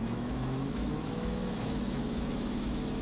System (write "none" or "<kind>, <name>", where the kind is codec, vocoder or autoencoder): autoencoder, DAC-VAE